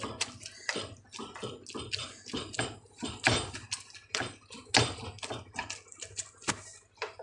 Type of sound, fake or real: real